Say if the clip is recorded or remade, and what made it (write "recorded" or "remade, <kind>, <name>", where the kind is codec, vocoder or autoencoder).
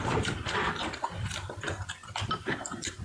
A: recorded